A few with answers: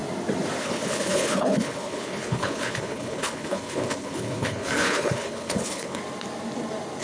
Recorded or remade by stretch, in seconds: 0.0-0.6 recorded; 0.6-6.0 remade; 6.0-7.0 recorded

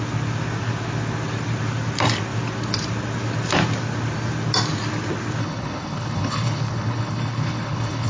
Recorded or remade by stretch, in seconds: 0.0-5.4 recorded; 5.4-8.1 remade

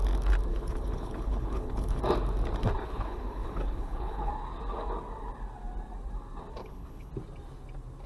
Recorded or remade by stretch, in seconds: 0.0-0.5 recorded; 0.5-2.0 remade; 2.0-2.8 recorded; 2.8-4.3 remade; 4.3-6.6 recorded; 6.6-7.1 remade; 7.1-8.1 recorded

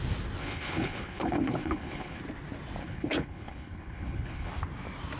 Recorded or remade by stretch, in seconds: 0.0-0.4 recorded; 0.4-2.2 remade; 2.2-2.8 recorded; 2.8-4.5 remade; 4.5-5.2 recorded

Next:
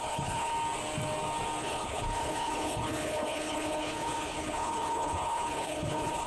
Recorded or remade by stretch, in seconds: 0.0-0.5 remade; 0.5-1.6 recorded; 1.6-6.3 remade

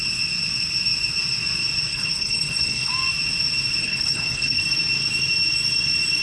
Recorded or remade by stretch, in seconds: 0.0-1.9 recorded; 1.9-2.9 remade; 2.9-3.8 recorded; 3.8-4.6 remade; 4.6-6.2 recorded

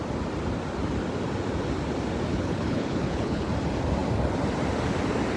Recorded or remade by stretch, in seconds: 0.0-2.3 recorded; 2.3-3.5 remade; 3.5-5.4 recorded